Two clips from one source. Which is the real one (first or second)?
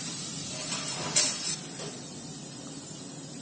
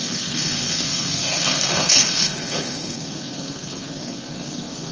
first